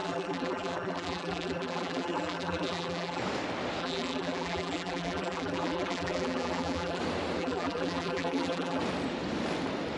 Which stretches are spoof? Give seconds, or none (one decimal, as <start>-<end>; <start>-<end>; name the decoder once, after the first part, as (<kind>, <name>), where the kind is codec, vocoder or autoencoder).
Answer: 0.0-3.2 (vocoder, BigVGAN v2); 3.8-7.0; 7.4-8.8

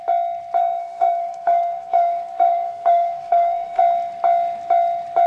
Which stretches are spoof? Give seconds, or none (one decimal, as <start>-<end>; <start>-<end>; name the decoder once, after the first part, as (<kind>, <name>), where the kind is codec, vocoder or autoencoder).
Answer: 0.6-3.8 (codec, SNAC)

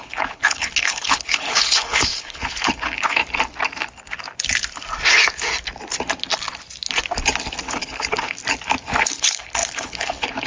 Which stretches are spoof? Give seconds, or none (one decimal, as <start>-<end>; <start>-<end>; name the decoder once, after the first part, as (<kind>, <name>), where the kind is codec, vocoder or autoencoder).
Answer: 0.0-3.2 (codec, HILCodec); 7.6-8.4; 9.0-10.5

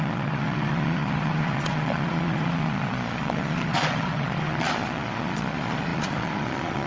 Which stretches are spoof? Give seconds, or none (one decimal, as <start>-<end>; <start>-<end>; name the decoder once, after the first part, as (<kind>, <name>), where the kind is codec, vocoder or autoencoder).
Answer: 0.0-6.9 (vocoder, Vocos)

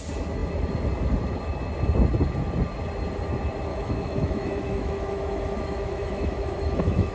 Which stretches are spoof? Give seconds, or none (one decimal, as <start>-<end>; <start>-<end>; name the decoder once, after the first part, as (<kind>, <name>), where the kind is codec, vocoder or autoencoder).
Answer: 3.7-7.1 (autoencoder, DAC-VAE)

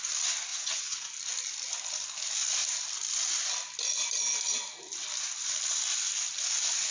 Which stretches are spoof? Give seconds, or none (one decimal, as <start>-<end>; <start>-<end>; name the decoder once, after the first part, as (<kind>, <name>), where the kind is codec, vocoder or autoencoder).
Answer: 0.5-1.1 (vocoder, WaveNeXt)

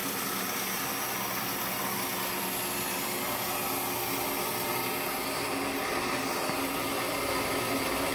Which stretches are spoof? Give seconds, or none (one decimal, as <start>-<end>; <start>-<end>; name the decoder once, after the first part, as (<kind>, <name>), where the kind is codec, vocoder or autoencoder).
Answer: none